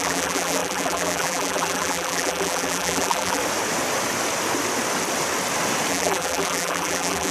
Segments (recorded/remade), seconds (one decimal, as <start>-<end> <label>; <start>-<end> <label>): 0.0-3.4 remade; 3.4-5.9 recorded; 5.9-7.3 remade